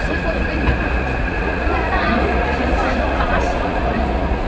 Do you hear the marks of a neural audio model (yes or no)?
yes